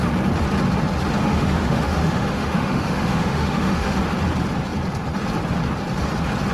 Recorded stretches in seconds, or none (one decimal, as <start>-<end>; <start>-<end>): 0.0-1.2; 4.0-6.5